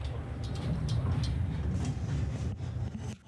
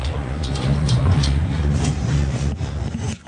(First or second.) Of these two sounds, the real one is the first